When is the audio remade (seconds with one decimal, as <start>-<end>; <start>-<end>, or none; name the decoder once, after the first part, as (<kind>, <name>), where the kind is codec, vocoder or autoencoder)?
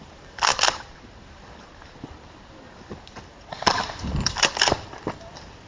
0.0-0.5 (vocoder, BigVGAN v2); 3.9-5.7